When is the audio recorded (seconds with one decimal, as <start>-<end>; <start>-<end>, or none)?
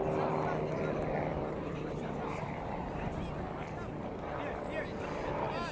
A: 0.0-1.3; 3.3-5.7